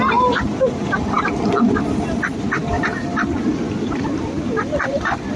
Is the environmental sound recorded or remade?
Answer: remade